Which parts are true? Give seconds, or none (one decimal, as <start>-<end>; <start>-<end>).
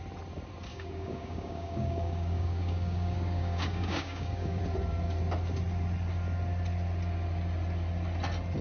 0.0-0.7; 4.6-8.6